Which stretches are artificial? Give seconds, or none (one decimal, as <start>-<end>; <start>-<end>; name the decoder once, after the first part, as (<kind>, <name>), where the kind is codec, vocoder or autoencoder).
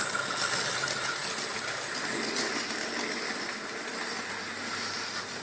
none